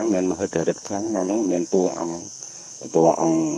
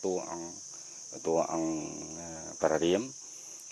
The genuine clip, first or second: second